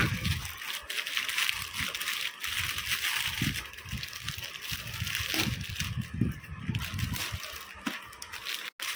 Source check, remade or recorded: recorded